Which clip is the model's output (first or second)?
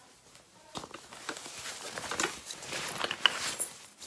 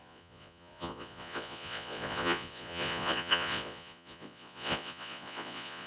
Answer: second